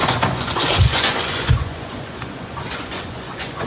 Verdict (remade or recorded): remade